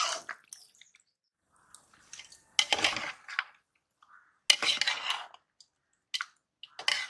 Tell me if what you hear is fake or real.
real